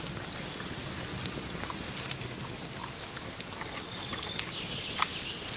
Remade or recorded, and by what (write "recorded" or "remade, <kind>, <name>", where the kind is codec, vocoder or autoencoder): recorded